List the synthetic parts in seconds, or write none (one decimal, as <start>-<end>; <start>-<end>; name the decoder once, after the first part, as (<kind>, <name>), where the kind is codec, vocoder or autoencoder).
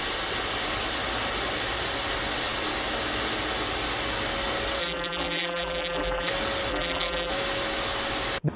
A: 4.8-6.3 (vocoder, BigVGAN v2); 6.7-7.3